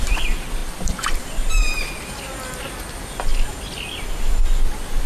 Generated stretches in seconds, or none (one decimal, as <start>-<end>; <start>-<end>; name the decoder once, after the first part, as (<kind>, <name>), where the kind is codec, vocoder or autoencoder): 0.6-1.8 (vocoder, BigVGAN v2)